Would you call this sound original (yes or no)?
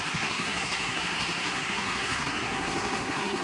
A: no